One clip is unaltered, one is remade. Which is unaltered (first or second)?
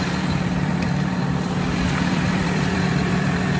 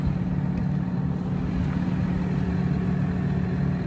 second